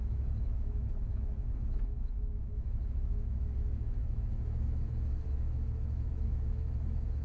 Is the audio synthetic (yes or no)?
yes